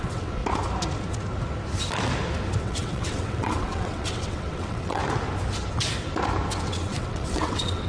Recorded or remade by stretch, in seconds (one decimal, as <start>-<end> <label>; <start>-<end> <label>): 0.0-0.4 remade; 0.4-2.6 recorded; 2.6-5.0 remade; 5.0-6.6 recorded; 6.6-7.9 remade

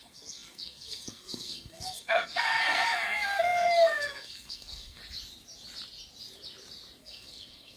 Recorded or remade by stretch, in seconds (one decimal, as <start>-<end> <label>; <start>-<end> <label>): 0.0-5.0 remade; 5.0-7.0 recorded; 7.0-7.8 remade

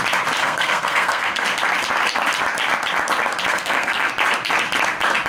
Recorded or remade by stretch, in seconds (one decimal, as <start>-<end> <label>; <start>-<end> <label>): 0.0-0.4 recorded; 0.4-1.4 remade; 1.4-3.5 recorded; 3.5-4.1 remade; 4.1-5.3 recorded

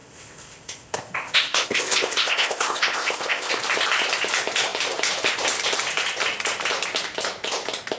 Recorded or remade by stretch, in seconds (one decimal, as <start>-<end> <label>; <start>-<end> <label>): 0.0-3.5 remade; 3.5-8.0 recorded

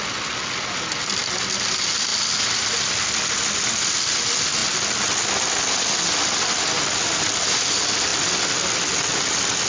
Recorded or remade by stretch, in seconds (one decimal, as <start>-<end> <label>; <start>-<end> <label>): 0.0-9.7 recorded

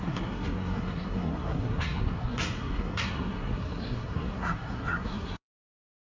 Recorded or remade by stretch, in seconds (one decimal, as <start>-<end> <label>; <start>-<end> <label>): 0.0-6.0 remade

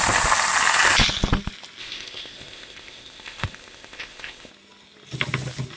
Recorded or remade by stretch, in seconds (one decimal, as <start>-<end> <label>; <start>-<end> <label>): 0.0-1.8 recorded; 1.8-4.5 remade; 4.5-5.8 recorded

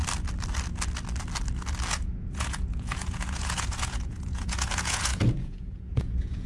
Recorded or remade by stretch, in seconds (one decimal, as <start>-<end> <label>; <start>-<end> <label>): 0.0-1.9 recorded; 1.9-6.5 remade